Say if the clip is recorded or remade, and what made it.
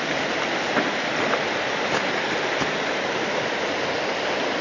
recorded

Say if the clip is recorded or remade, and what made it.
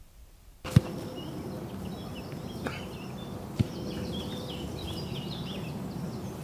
recorded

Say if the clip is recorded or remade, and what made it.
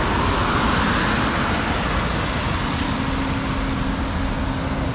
recorded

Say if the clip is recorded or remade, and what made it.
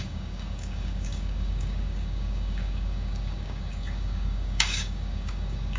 remade, codec, DAC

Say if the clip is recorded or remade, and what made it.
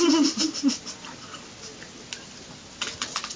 recorded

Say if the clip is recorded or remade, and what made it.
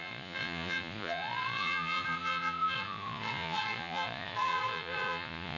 remade, vocoder, Vocos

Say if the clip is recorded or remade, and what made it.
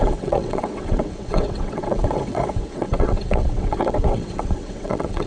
remade, vocoder, WaveNeXt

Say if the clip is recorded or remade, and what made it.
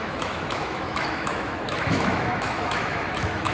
remade, autoencoder, DAC-VAE